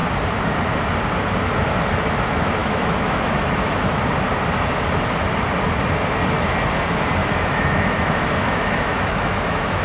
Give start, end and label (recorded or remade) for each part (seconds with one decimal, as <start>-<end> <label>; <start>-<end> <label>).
0.0-2.6 recorded; 2.6-4.0 remade; 4.0-7.2 recorded; 7.2-9.8 remade